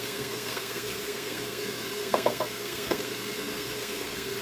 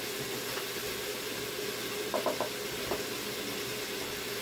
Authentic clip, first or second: second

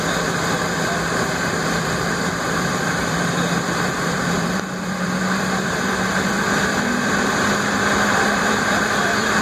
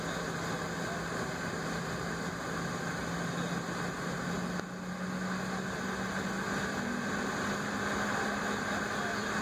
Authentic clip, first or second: second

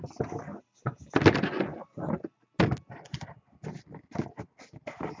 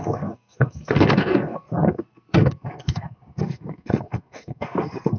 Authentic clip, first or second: first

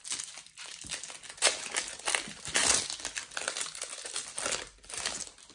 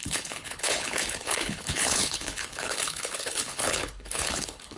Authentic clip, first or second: first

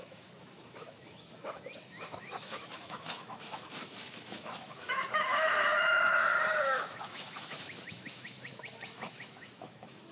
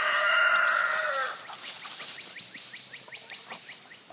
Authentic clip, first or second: second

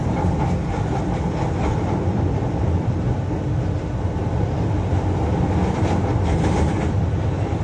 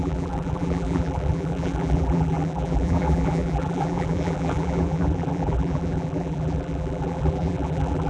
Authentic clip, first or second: first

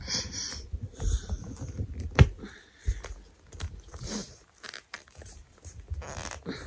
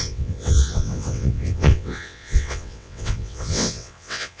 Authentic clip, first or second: first